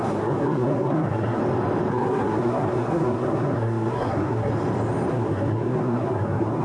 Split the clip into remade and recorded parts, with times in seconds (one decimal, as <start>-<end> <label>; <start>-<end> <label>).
0.0-1.4 remade; 1.4-1.9 recorded; 1.9-4.5 remade; 4.5-5.1 recorded; 5.1-6.6 remade